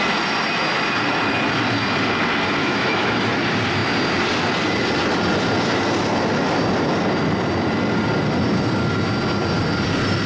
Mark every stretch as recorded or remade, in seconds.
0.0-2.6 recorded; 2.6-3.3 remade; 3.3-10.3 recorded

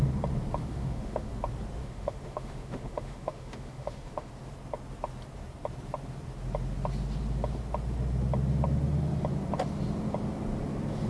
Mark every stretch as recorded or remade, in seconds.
0.0-0.6 recorded; 0.6-1.3 remade; 1.3-1.8 recorded; 1.8-4.3 remade; 4.3-11.1 recorded